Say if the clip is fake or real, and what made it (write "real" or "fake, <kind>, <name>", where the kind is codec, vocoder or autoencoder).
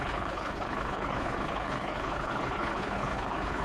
fake, codec, HILCodec